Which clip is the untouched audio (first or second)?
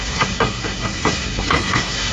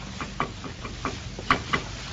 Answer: second